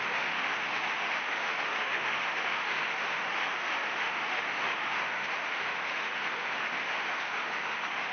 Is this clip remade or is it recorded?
remade